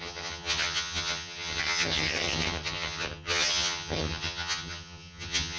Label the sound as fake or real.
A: fake